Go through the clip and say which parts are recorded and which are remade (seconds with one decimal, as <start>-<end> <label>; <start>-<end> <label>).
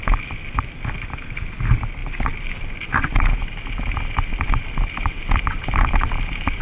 0.0-6.6 recorded